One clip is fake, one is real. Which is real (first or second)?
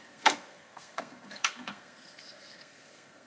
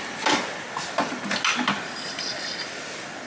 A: second